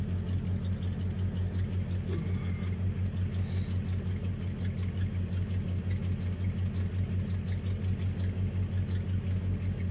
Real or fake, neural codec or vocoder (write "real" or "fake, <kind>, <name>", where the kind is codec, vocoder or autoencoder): real